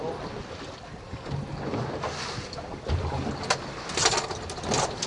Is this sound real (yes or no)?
yes